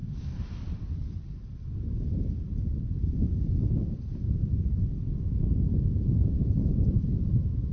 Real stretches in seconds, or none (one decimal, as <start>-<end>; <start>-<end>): 0.0-7.7